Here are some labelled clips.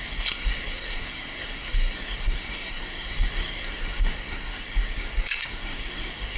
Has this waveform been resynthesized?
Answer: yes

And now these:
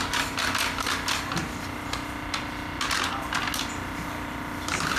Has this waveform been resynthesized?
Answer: no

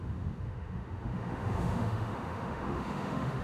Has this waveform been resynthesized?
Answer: yes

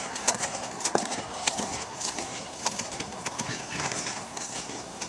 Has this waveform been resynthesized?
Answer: yes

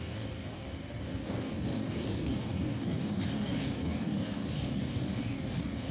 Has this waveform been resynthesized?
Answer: yes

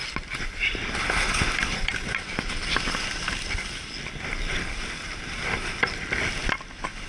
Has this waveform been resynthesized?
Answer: no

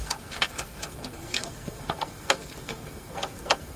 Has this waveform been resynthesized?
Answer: yes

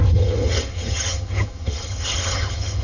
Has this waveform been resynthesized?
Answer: yes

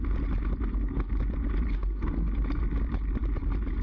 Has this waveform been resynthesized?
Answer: no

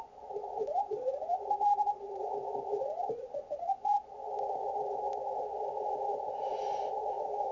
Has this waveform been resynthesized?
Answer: yes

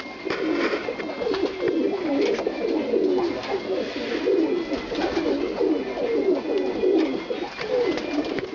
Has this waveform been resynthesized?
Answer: no